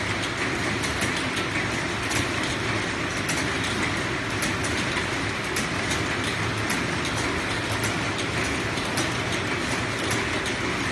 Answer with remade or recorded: recorded